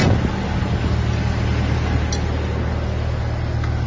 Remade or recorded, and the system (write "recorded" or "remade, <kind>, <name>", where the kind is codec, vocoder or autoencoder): recorded